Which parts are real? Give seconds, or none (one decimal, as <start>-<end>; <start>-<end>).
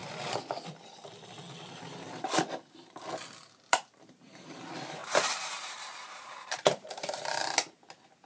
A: 0.0-3.7